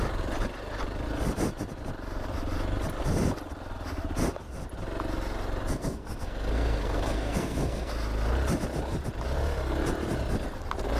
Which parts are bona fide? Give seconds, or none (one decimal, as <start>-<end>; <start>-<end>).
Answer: 0.0-5.7; 7.9-11.0